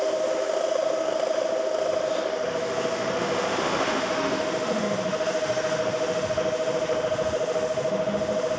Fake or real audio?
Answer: fake